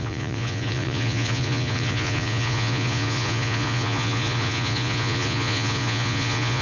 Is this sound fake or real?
fake